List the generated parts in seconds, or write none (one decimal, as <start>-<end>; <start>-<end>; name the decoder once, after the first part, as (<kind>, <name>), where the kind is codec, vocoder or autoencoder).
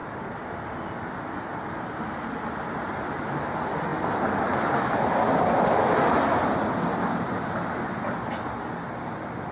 none